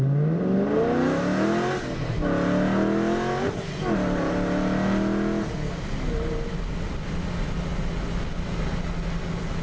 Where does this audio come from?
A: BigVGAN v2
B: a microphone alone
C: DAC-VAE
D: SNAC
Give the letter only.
B